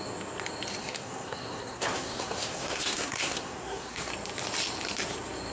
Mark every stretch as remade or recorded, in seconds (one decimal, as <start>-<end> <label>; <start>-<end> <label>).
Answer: 0.0-0.8 recorded; 0.8-4.1 remade; 4.1-5.5 recorded